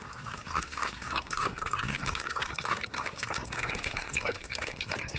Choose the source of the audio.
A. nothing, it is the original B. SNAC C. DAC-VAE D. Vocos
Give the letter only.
B